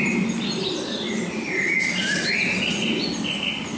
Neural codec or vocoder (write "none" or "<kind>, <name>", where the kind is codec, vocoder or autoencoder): none